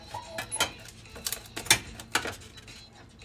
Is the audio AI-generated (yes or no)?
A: no